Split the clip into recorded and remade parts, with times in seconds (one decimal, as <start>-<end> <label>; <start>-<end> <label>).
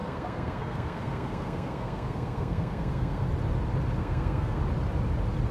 0.0-3.3 remade; 3.3-4.0 recorded; 4.0-4.6 remade; 4.6-5.5 recorded